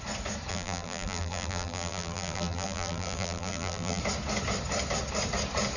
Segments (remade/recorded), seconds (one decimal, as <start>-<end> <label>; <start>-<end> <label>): 0.0-0.5 recorded; 0.5-4.0 remade; 4.0-5.8 recorded